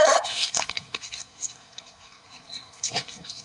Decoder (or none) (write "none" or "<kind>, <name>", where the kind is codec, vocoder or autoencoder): codec, SNAC